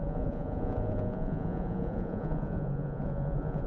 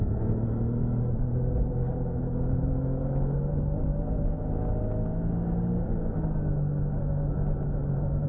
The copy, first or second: first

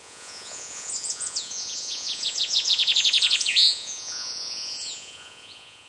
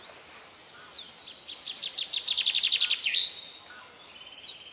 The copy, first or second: first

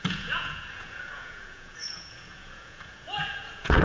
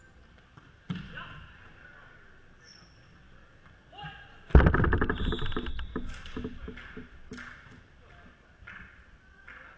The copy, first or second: first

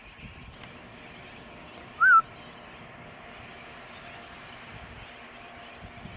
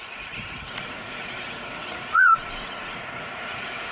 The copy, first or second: second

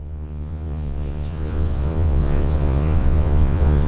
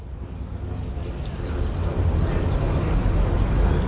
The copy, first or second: first